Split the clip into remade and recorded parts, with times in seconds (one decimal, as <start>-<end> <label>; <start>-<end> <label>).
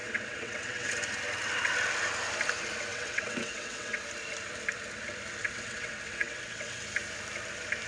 0.0-0.9 remade; 0.9-2.9 recorded; 2.9-4.0 remade; 4.0-5.4 recorded; 5.4-6.8 remade; 6.8-7.9 recorded